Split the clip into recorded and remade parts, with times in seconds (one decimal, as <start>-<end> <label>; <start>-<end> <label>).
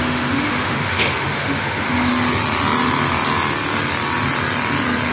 0.0-2.1 remade; 2.1-5.1 recorded